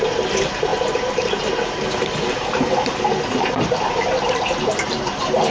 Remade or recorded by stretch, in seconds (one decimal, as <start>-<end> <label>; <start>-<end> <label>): 0.0-5.5 remade